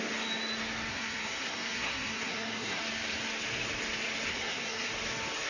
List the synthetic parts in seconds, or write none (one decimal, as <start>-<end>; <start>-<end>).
0.9-2.8; 4.3-4.9